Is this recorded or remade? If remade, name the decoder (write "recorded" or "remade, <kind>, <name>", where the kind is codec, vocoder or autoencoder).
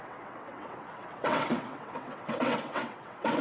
remade, vocoder, WaveNeXt